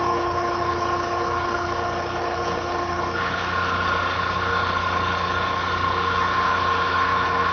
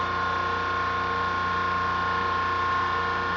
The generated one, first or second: first